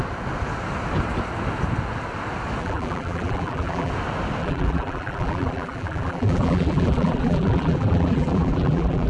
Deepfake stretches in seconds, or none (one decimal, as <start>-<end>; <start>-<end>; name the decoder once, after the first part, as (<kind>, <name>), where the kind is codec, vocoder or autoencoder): 2.6-3.9 (vocoder, BigVGAN v2); 4.4-9.1